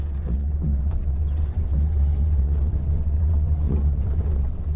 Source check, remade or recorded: remade